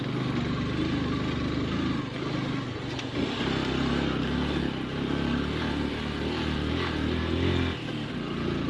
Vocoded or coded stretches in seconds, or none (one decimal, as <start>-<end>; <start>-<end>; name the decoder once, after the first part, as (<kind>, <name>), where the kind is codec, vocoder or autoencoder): none